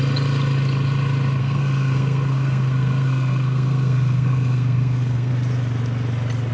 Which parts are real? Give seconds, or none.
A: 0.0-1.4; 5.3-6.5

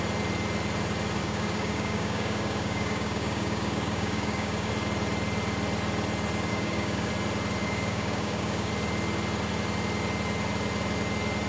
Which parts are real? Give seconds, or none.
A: 0.0-1.2; 4.7-6.5; 7.1-7.6; 8.7-11.5

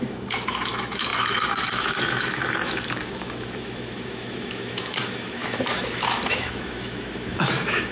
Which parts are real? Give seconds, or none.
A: none

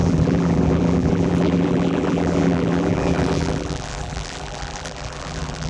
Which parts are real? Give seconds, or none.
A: none

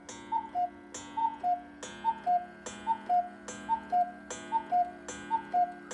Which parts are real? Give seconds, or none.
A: 0.0-5.9